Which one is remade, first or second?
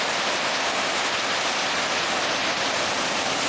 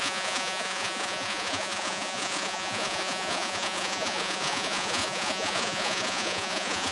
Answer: second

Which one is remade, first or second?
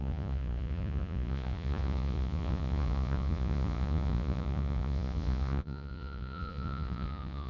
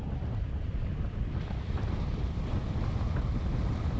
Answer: first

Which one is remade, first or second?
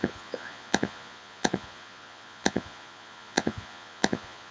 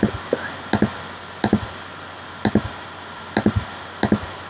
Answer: first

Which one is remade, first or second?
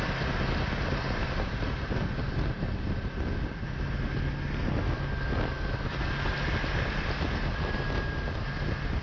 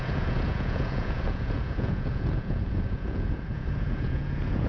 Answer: second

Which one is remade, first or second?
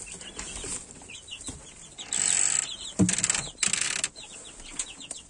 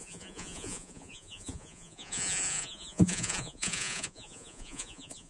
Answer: second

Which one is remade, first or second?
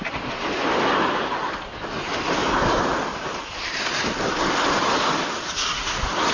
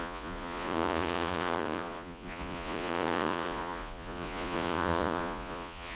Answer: second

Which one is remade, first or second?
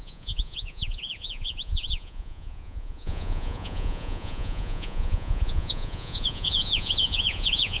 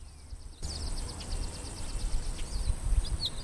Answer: first